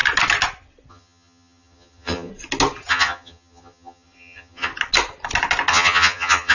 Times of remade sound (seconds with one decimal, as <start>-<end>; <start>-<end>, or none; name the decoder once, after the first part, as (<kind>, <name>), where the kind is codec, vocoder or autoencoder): 0.9-2.3 (vocoder, HiFi-GAN); 2.9-4.7; 5.7-6.5